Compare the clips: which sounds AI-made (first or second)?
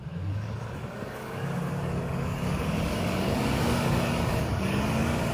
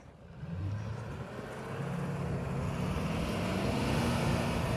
first